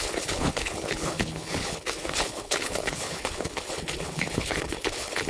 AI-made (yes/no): yes